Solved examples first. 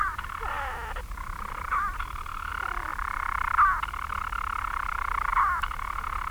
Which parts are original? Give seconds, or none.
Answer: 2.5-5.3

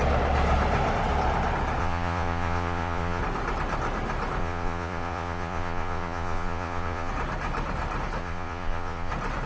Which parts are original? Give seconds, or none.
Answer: 0.0-1.8; 3.2-4.4; 7.1-8.2; 9.1-9.5

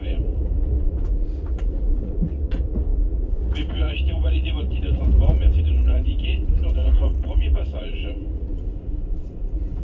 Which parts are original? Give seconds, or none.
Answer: none

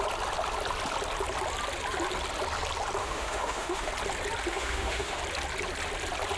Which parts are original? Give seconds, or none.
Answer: 0.0-3.0; 3.9-4.5; 5.2-6.4

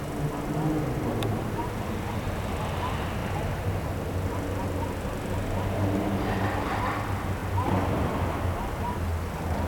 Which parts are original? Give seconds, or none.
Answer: 0.0-9.7